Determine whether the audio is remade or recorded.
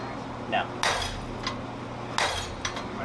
recorded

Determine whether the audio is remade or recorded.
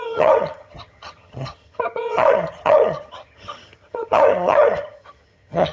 remade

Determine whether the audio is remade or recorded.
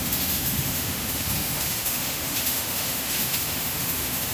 remade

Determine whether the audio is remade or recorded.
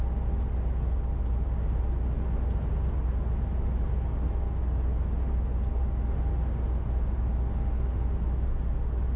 recorded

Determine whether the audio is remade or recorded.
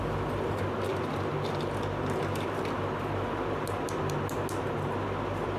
recorded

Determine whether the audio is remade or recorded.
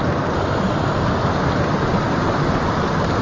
recorded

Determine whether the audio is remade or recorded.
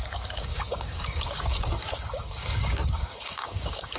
remade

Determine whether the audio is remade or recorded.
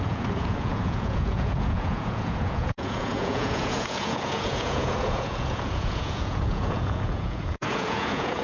remade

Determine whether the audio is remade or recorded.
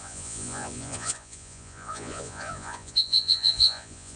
remade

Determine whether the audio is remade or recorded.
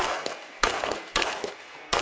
remade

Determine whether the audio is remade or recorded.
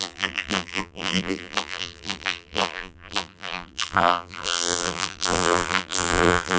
remade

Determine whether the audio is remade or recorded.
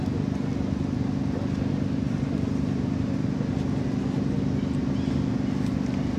recorded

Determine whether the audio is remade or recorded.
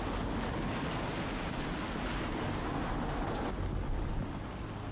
recorded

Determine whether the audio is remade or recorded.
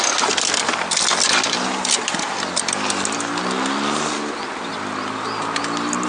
recorded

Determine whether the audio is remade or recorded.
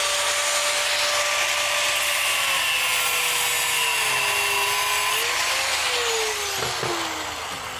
recorded